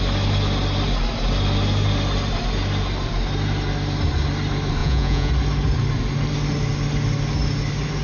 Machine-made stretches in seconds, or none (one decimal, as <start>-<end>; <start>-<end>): 4.8-5.3

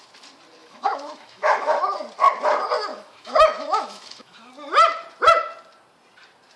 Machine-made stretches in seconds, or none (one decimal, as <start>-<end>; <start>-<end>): 0.6-1.8; 2.9-4.5

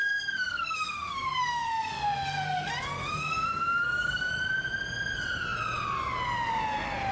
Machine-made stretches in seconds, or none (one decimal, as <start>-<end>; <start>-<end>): 0.0-4.3

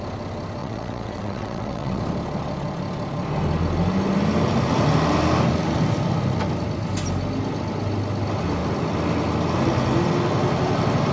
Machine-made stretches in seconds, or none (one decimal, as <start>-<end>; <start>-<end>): 0.6-2.0